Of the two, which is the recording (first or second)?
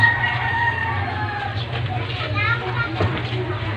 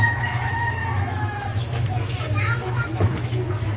first